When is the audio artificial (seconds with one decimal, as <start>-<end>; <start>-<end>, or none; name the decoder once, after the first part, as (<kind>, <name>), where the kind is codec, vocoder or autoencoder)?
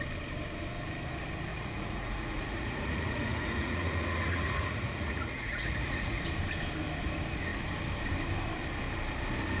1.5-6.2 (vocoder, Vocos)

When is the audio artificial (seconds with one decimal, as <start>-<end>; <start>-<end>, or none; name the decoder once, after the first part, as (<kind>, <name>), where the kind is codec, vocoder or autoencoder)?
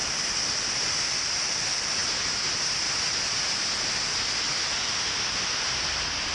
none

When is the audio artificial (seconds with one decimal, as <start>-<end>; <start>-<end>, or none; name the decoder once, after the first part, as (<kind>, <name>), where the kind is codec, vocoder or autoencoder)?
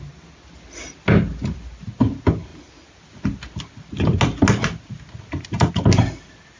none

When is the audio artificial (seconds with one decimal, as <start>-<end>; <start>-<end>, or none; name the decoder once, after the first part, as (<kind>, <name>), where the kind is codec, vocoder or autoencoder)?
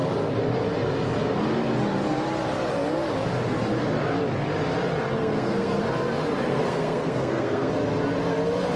5.2-5.8 (codec, SNAC); 6.5-7.7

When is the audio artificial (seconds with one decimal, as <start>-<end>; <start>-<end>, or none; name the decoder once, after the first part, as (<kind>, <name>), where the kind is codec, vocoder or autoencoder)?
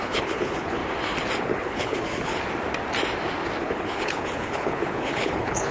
0.0-0.8 (codec, HILCodec); 1.4-2.3; 3.6-5.7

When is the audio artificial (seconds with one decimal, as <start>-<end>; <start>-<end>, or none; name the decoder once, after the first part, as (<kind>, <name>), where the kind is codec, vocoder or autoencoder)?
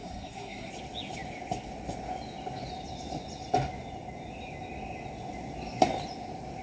0.0-0.7 (codec, SNAC)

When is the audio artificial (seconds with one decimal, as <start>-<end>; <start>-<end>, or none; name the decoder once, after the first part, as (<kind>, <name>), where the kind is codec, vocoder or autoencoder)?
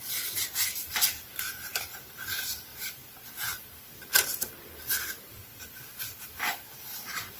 0.0-5.4 (vocoder, BigVGAN v2); 6.1-7.4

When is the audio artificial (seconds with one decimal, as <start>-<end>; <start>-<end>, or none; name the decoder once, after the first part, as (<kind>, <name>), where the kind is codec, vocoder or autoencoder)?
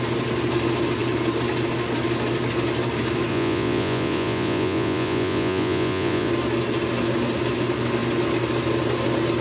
3.3-6.3 (vocoder, Vocos)